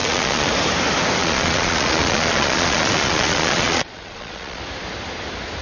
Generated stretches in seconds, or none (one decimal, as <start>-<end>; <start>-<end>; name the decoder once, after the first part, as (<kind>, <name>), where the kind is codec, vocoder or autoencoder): 0.0-0.5 (vocoder, Vocos); 1.2-4.6